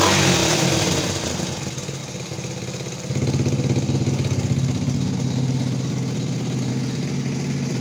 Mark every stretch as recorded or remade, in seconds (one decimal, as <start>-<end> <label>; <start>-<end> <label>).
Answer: 0.0-7.8 recorded